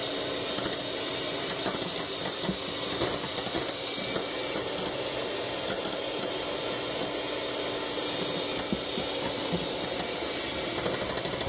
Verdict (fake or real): real